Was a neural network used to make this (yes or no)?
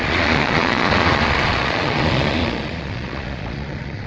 yes